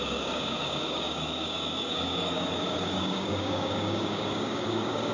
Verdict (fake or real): fake